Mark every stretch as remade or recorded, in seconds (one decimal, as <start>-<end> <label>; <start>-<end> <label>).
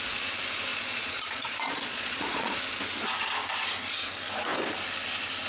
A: 0.0-0.7 recorded; 0.7-2.6 remade; 2.6-5.5 recorded